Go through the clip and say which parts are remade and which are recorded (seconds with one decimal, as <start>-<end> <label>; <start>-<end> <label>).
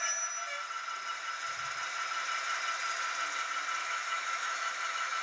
0.0-3.8 recorded; 3.8-5.2 remade